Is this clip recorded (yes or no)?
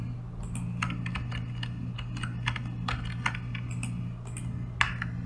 yes